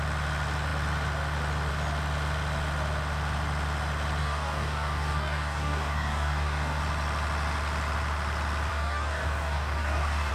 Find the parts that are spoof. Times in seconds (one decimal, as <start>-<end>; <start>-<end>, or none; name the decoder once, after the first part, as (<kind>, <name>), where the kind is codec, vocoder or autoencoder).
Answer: 4.2-6.8 (codec, DAC); 8.7-10.3